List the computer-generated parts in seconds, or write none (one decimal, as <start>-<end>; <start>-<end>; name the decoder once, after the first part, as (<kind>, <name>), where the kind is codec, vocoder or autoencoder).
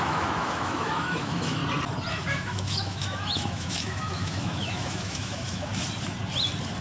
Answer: 0.0-1.6 (autoencoder, DAC-VAE); 2.1-5.7